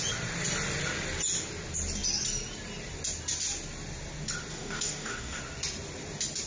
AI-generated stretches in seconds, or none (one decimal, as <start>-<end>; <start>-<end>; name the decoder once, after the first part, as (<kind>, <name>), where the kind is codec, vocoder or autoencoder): 4.5-5.4 (codec, DAC)